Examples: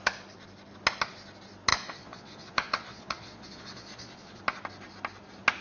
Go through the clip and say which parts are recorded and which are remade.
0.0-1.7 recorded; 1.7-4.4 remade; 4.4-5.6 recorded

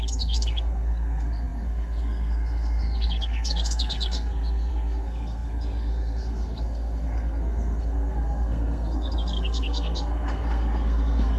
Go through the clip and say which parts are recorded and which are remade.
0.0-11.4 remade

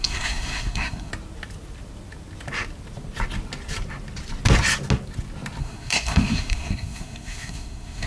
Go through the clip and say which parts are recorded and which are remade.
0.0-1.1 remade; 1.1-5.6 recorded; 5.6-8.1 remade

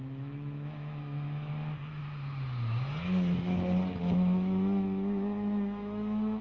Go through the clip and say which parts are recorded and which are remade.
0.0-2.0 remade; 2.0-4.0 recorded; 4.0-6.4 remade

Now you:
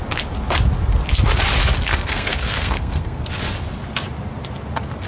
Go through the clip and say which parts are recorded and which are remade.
0.0-1.9 recorded; 1.9-3.3 remade; 3.3-5.1 recorded